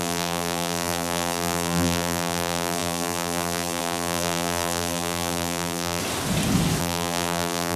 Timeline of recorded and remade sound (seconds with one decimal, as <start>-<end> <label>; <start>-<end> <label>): 0.0-6.0 remade; 6.0-6.8 recorded; 6.8-7.8 remade